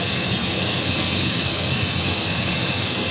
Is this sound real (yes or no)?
no